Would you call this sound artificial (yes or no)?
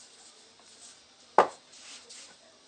no